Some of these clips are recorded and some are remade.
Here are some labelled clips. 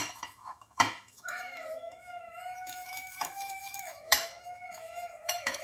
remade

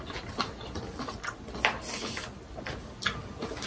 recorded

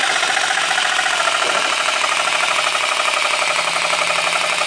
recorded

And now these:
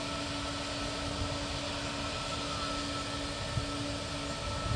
recorded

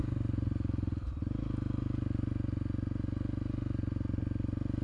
recorded